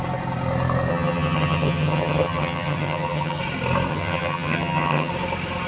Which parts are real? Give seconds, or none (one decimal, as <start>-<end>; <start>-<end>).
0.0-0.9; 3.4-3.9; 5.1-5.7